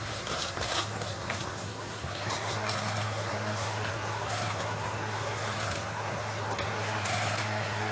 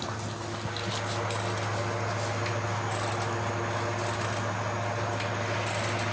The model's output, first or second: first